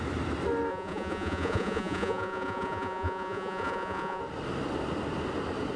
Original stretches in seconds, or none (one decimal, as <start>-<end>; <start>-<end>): 0.0-0.7; 4.2-5.8